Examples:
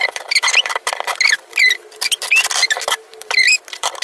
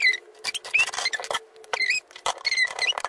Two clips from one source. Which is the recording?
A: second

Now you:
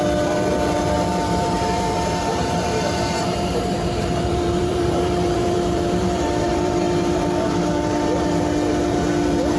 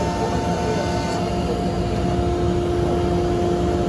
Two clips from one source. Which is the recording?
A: second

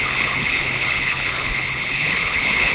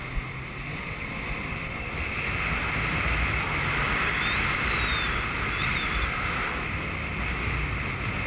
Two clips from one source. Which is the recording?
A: second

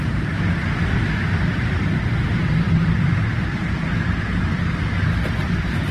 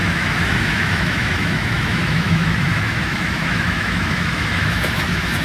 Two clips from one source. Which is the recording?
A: first